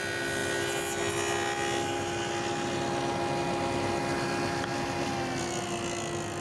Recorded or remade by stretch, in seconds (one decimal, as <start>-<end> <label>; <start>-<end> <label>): 0.0-6.4 recorded